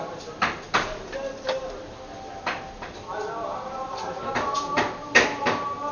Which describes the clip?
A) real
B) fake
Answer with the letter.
A